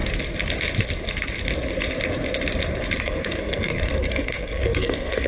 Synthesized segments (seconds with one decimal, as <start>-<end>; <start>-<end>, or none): 3.0-5.3